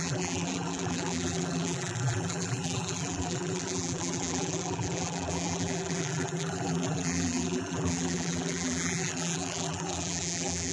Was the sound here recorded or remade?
remade